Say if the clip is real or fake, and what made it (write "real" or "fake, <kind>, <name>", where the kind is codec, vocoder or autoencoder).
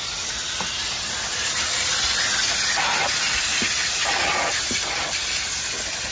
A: real